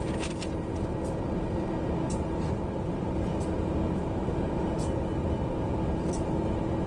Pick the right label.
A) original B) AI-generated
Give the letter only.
A